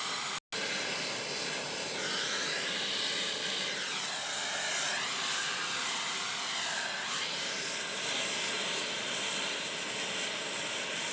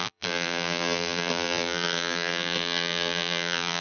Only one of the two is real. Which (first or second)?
first